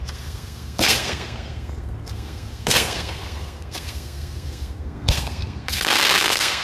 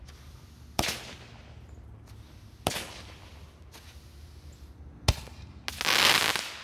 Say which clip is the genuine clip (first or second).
second